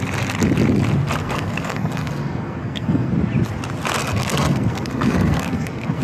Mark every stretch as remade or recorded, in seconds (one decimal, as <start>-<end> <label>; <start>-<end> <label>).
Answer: 0.0-1.2 recorded; 1.2-3.1 remade; 3.1-4.0 recorded; 4.0-6.0 remade